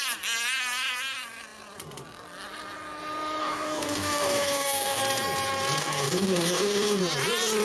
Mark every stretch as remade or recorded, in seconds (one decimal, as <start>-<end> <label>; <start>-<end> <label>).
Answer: 0.0-3.4 recorded; 3.4-5.0 remade; 5.0-5.8 recorded; 5.8-7.0 remade; 7.0-7.6 recorded